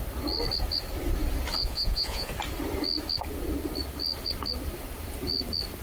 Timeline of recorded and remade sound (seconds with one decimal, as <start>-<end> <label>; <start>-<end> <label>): 0.0-1.6 recorded; 1.6-2.3 remade; 2.3-5.8 recorded

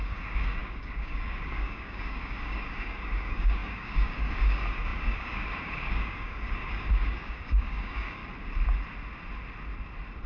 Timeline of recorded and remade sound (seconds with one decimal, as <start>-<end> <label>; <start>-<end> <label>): 0.0-8.2 remade; 8.2-10.3 recorded

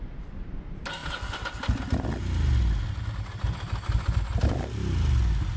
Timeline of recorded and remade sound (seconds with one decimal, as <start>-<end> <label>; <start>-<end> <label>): 0.0-5.6 recorded

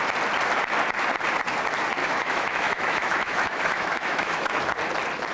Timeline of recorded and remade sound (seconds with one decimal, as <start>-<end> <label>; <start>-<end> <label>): 0.0-2.0 recorded; 2.0-4.6 remade; 4.6-5.3 recorded